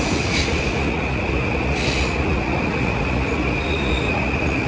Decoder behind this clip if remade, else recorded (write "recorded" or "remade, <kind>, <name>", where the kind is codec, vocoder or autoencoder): remade, vocoder, Vocos